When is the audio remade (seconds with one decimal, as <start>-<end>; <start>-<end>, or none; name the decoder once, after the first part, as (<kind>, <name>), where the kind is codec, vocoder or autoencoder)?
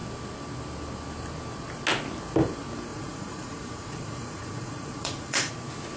2.9-5.5 (vocoder, Vocos)